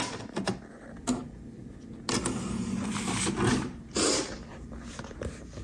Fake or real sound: real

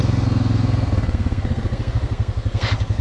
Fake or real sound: fake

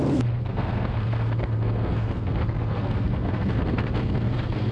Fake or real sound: fake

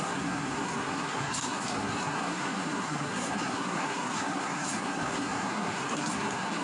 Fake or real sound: fake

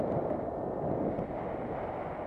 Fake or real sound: real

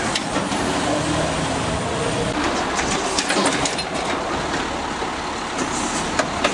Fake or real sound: real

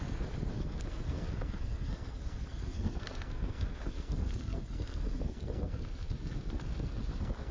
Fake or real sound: fake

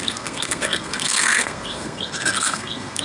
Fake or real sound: fake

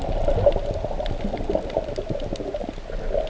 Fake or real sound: real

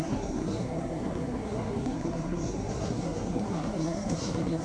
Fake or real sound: fake